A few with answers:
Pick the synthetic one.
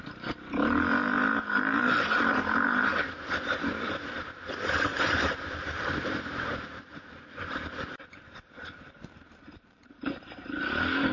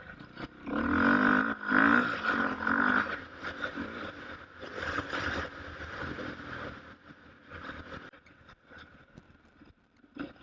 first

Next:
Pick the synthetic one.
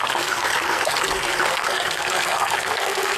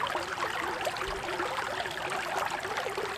first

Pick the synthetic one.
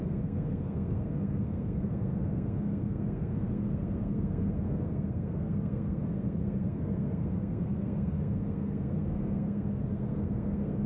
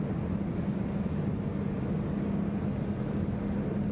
first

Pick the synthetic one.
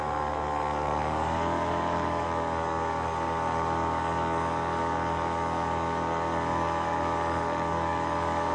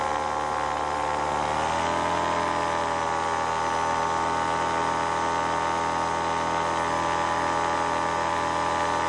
first